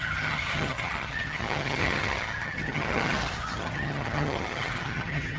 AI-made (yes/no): yes